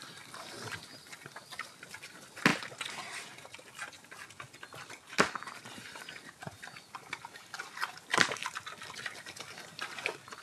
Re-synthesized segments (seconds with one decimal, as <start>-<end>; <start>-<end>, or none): none